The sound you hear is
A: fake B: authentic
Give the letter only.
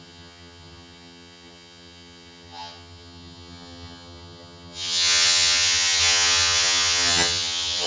A